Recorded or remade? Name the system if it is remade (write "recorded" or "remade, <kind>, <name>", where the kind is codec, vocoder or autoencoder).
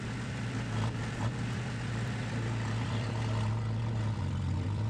remade, vocoder, BigVGAN v2